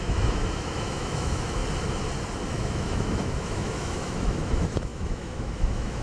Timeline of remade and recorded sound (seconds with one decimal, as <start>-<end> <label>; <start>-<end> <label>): 0.0-1.6 remade; 1.6-2.5 recorded; 2.5-6.0 remade